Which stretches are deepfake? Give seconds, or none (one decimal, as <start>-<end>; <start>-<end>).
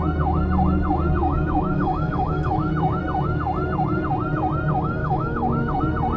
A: 1.2-3.0; 5.0-5.8